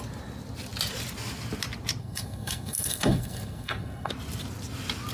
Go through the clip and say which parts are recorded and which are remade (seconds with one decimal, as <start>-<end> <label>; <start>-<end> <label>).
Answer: 0.0-2.0 recorded; 2.0-4.1 remade; 4.1-5.1 recorded